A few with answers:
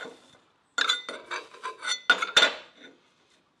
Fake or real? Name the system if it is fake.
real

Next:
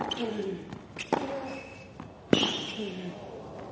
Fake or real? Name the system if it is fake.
real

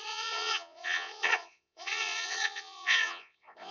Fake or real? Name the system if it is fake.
fake, vocoder, Vocos